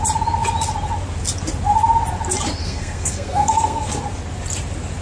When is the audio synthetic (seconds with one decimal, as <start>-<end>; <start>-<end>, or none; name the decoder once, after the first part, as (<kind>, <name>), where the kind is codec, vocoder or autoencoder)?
2.6-3.9 (codec, SNAC)